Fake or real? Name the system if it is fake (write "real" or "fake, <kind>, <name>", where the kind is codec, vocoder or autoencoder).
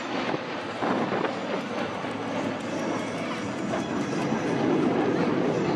real